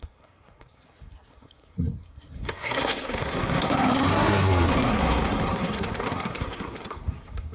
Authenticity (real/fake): fake